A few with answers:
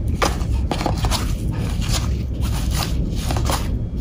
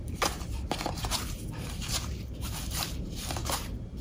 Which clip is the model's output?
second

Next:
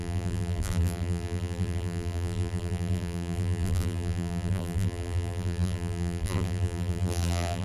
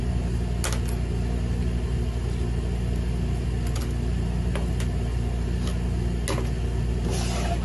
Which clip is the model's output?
first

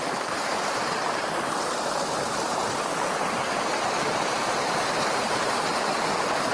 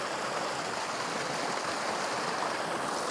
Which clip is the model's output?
first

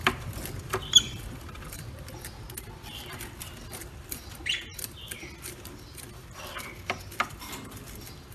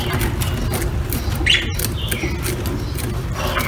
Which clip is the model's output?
first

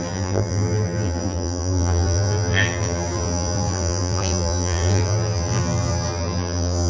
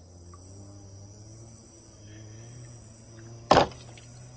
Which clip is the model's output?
first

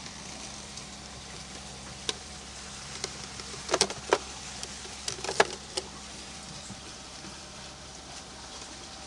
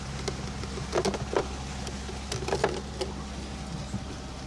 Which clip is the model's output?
first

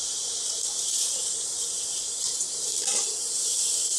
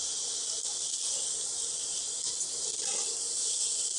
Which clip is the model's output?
first